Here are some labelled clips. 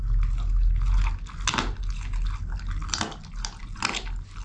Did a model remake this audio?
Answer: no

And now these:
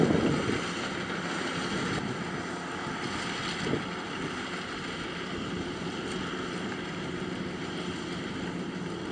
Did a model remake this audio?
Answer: no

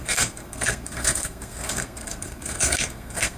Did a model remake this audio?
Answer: yes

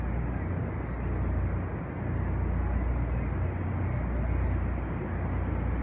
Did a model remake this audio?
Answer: no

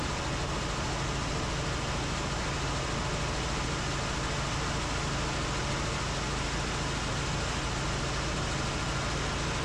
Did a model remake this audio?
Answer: no